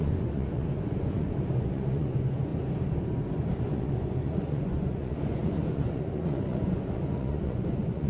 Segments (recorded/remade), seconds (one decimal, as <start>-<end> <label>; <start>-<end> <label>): 0.0-2.5 remade; 2.5-3.6 recorded; 3.6-8.1 remade